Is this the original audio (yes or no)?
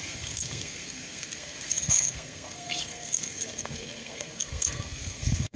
no